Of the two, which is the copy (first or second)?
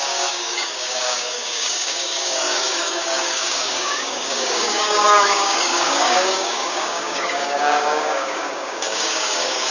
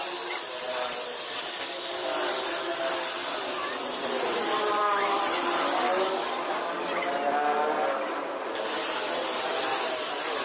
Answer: first